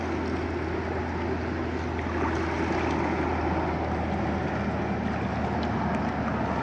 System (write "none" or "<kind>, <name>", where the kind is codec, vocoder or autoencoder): none